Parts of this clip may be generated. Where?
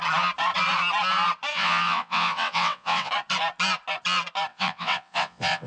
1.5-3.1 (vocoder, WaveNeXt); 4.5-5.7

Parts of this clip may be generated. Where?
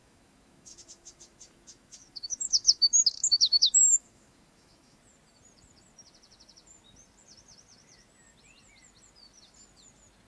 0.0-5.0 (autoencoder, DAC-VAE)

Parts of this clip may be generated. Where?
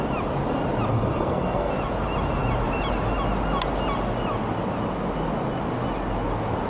0.9-1.7 (codec, SNAC)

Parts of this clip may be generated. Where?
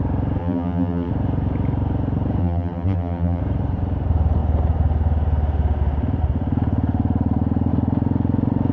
0.4-1.1 (vocoder, BigVGAN v2); 2.4-3.4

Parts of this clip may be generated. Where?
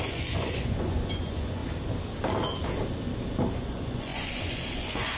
0.0-1.6 (vocoder, Vocos); 3.6-5.2